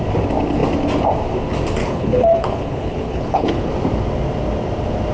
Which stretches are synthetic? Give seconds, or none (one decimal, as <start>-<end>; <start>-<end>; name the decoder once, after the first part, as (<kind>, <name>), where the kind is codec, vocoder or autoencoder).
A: 1.8-3.7 (codec, HILCodec)